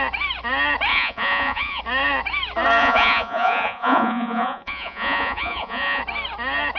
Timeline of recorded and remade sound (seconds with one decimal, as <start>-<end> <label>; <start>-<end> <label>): 0.0-0.9 recorded; 0.9-1.8 remade; 1.8-2.8 recorded; 2.8-6.0 remade; 6.0-6.8 recorded